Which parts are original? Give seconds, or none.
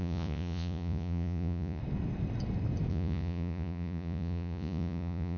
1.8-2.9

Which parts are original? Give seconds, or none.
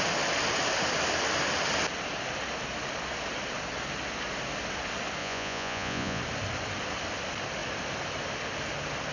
0.0-5.2; 6.2-9.1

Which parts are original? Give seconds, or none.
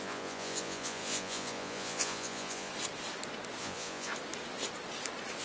2.7-3.6; 4.1-5.4